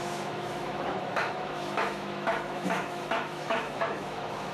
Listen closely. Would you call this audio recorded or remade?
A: remade